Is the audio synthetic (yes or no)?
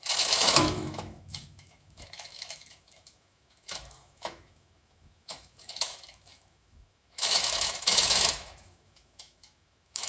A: yes